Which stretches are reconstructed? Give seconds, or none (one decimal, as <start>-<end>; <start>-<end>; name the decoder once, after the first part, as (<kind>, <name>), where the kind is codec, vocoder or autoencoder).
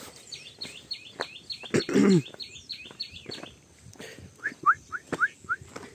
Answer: 2.0-3.4 (vocoder, BigVGAN v2)